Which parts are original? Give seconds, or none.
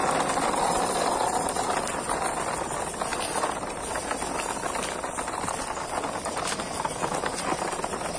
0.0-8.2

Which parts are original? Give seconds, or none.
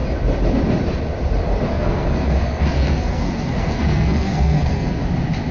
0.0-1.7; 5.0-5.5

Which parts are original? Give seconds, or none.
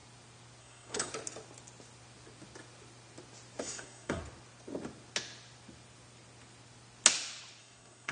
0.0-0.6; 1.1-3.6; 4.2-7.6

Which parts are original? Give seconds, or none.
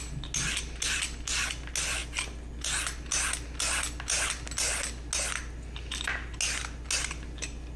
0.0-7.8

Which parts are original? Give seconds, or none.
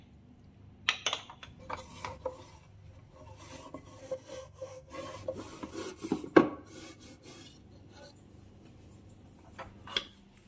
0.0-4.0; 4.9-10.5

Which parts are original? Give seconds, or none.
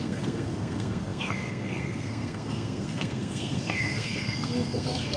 none